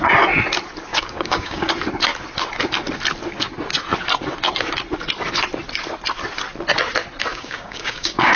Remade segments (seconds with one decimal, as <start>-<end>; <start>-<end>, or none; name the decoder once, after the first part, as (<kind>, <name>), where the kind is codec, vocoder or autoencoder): 0.9-1.7 (codec, DAC); 7.3-8.4

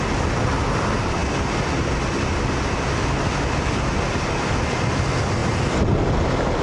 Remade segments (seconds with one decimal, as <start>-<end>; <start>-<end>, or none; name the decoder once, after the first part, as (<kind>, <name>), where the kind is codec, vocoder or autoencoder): none

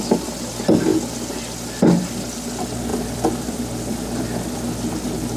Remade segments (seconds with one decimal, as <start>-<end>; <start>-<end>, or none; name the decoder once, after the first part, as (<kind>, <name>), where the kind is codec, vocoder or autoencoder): 2.9-4.4 (vocoder, BigVGAN v2)

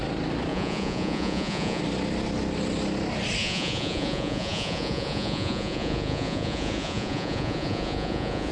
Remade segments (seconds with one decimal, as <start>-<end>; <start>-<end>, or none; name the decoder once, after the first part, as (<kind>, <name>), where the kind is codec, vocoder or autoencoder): 0.5-1.8 (vocoder, Vocos); 3.4-8.5

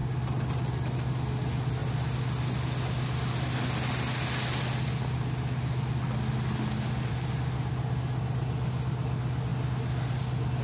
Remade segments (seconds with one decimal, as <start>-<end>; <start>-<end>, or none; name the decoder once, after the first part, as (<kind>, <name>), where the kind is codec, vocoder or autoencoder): none

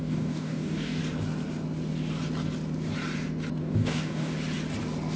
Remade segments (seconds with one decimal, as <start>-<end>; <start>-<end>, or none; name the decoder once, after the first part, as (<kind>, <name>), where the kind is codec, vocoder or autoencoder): 0.0-1.0 (codec, DAC); 3.6-4.3